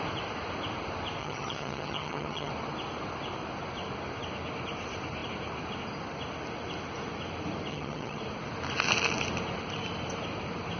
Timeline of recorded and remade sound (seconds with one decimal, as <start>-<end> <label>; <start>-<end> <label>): 0.0-1.2 recorded; 1.2-2.5 remade; 2.5-7.7 recorded; 7.7-8.2 remade; 8.2-10.8 recorded